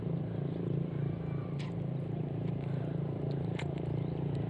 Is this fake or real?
fake